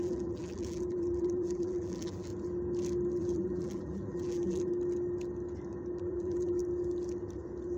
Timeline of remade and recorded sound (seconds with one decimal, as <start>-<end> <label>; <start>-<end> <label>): 0.0-2.3 remade; 2.3-3.2 recorded; 3.2-4.7 remade; 4.7-6.0 recorded; 6.0-6.6 remade; 6.6-7.8 recorded